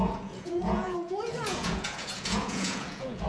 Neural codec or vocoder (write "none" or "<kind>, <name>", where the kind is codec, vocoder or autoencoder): vocoder, Vocos